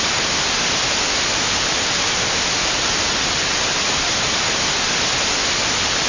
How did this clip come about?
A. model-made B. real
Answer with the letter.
B